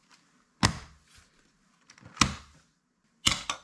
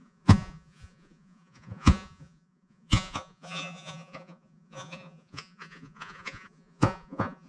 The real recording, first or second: first